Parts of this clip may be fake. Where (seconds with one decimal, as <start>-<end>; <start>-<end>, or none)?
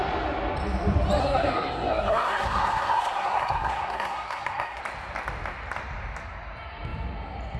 1.2-4.8